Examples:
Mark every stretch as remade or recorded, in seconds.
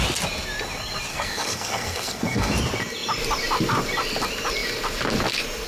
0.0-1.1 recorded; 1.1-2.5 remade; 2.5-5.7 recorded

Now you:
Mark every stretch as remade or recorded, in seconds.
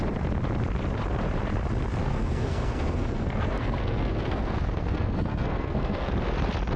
0.0-2.0 recorded; 2.0-6.1 remade; 6.1-6.8 recorded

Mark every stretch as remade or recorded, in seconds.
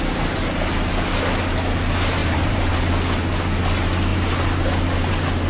0.0-2.2 recorded; 2.2-2.8 remade; 2.8-5.5 recorded